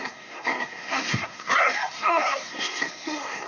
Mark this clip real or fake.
fake